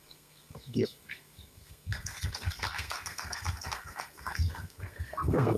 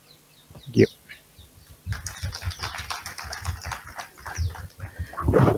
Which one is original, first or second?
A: second